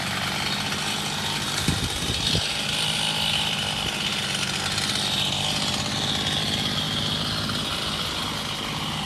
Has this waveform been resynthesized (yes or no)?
no